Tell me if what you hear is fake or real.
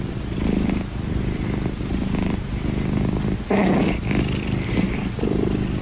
real